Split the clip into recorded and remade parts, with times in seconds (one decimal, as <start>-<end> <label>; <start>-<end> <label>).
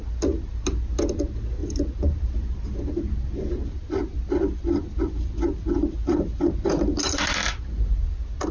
0.0-8.5 recorded